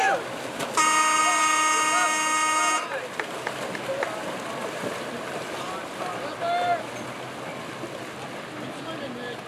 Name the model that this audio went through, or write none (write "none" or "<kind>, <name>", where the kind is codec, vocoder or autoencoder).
none